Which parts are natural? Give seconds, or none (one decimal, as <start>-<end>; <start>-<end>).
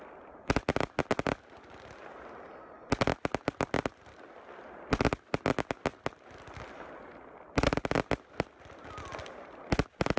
0.0-10.2